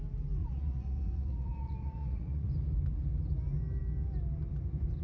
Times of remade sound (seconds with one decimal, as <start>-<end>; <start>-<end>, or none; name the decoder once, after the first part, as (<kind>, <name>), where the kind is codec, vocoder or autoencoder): 0.4-2.5 (vocoder, Vocos)

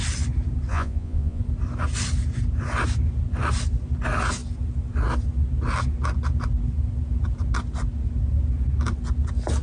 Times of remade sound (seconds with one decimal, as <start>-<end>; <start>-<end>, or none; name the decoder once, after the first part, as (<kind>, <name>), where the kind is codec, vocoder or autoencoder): 0.7-1.4 (vocoder, Vocos)

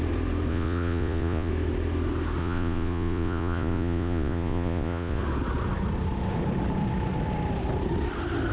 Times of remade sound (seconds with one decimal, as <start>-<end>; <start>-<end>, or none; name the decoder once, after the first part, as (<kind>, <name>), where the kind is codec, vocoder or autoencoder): 0.5-1.5 (vocoder, Vocos); 2.4-5.2

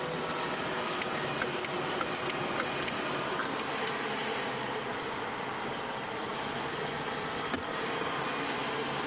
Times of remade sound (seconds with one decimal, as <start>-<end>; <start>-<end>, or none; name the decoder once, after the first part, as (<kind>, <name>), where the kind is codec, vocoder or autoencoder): none

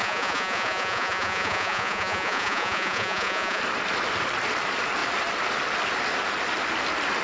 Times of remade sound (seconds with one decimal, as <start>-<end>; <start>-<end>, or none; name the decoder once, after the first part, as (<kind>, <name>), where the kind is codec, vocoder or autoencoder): 0.0-3.6 (vocoder, Vocos)